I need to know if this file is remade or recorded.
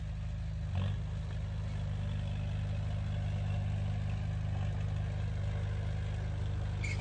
recorded